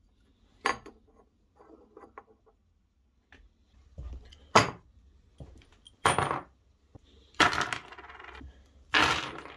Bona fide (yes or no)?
yes